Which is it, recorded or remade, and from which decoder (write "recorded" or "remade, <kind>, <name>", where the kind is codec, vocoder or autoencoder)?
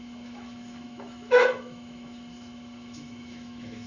remade, autoencoder, DAC-VAE